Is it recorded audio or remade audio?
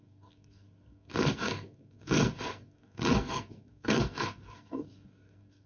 remade